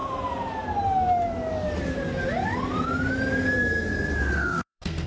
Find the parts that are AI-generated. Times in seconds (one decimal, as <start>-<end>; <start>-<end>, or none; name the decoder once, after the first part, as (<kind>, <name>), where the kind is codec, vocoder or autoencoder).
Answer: 4.2-5.1 (codec, SNAC)